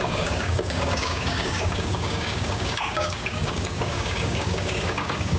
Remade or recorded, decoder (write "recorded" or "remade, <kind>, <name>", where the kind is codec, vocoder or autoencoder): remade, codec, DAC